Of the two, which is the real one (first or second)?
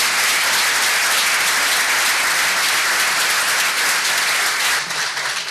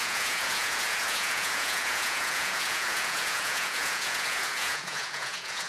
first